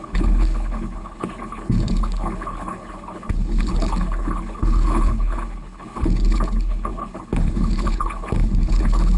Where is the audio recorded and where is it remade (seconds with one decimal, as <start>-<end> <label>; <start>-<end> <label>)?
0.0-9.2 remade